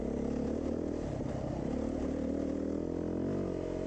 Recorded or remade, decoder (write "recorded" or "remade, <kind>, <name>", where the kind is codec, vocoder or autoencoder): recorded